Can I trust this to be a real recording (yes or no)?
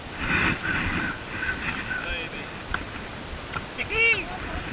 yes